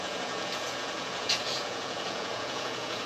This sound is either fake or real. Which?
fake